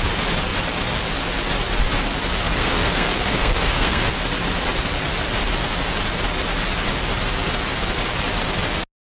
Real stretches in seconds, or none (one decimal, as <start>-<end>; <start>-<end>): 0.0-2.5; 4.1-9.1